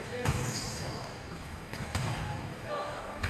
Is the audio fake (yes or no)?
yes